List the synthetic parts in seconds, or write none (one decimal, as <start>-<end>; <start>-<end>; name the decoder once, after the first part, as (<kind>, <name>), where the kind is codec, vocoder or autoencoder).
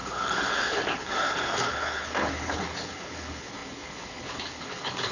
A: 0.0-5.1 (codec, HILCodec)